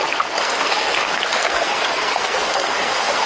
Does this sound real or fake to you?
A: fake